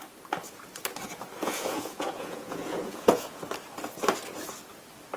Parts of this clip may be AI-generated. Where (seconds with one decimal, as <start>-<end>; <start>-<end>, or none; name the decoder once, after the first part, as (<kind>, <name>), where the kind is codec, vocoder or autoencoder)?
1.4-3.4 (vocoder, Vocos)